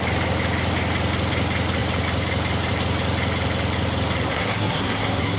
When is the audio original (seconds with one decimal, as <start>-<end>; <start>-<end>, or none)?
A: 0.0-4.3